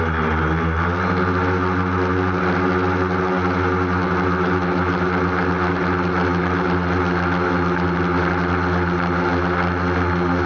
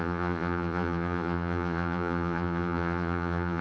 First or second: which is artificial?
second